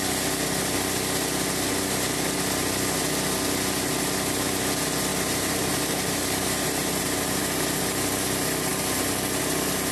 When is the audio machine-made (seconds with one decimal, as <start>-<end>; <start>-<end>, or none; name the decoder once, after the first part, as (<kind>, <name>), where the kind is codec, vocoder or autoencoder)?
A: 5.1-7.4 (vocoder, BigVGAN v2)